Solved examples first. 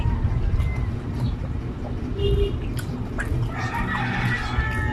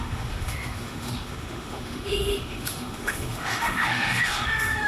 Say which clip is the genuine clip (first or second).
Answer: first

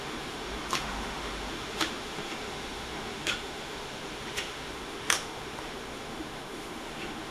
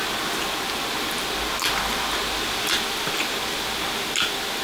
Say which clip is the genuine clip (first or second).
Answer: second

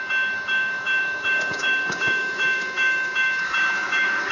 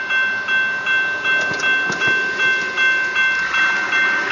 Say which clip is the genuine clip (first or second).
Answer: second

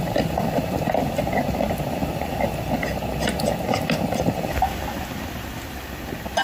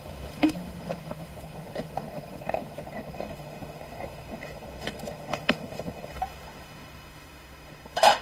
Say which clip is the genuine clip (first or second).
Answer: first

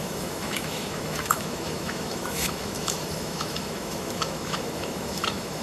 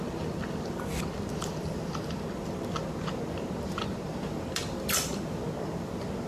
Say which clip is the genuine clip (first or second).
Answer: second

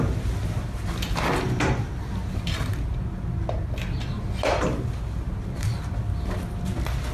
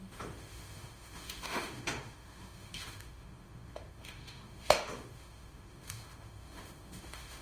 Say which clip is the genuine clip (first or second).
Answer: first